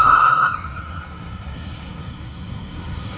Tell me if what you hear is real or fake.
fake